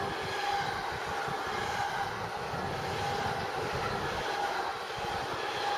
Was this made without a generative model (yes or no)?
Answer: yes